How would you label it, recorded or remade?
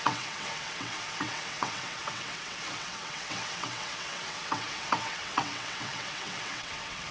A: remade